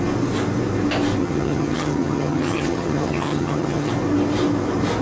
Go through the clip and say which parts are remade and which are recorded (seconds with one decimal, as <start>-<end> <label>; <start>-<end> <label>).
0.0-1.2 recorded; 1.2-3.9 remade; 3.9-5.0 recorded